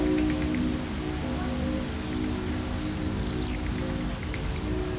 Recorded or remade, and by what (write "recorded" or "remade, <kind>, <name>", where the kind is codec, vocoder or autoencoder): recorded